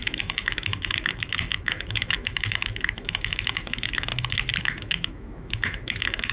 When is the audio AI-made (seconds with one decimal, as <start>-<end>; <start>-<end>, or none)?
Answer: 0.0-4.1; 4.6-6.3